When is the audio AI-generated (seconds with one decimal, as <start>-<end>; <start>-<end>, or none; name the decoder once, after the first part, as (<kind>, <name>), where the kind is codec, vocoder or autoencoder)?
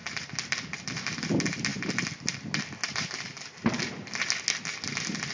none